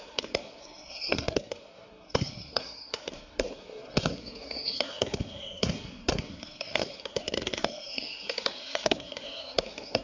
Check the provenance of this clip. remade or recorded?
remade